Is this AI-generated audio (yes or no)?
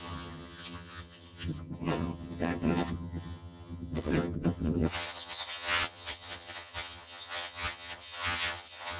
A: yes